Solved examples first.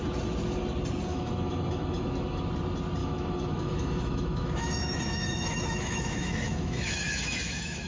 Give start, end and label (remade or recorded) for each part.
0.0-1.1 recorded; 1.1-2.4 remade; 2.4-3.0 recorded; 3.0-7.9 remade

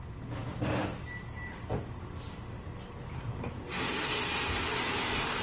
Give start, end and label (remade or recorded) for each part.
0.0-5.4 recorded

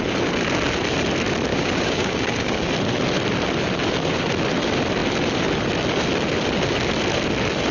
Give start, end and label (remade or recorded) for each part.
0.0-1.5 recorded; 1.5-2.7 remade; 2.7-7.7 recorded